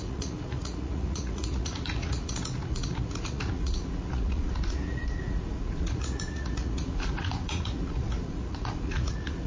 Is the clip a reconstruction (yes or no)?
yes